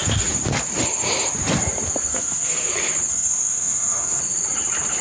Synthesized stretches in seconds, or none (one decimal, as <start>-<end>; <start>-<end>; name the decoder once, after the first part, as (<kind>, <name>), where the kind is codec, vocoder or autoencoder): 2.1-2.7 (codec, SNAC); 3.1-4.2